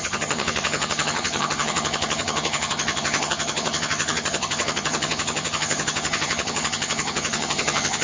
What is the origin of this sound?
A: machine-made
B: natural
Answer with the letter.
A